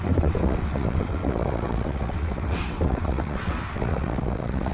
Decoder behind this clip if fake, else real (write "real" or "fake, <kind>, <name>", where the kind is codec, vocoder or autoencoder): fake, vocoder, WaveNeXt